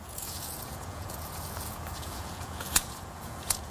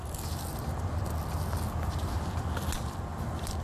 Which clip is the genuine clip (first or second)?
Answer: second